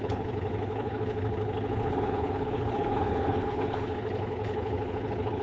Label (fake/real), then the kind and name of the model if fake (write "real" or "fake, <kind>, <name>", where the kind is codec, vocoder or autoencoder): fake, codec, HILCodec